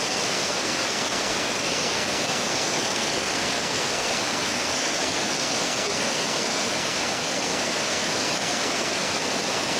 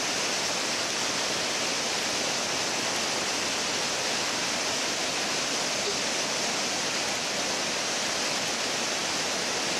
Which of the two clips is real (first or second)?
second